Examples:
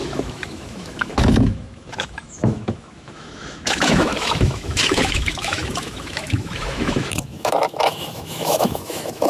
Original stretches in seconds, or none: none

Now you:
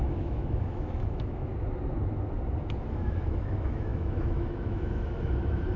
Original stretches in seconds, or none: 1.5-2.9